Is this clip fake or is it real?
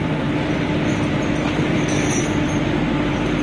real